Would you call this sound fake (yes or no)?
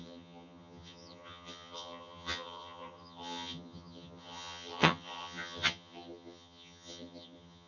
yes